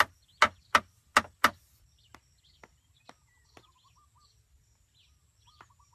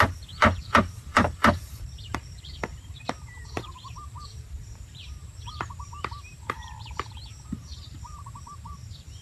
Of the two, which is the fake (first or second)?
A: second